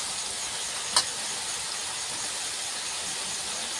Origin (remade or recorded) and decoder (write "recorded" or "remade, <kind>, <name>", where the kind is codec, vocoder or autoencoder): recorded